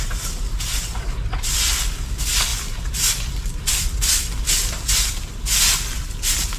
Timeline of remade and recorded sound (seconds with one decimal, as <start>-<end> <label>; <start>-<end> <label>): 0.0-0.7 recorded; 0.7-1.5 remade; 1.5-6.6 recorded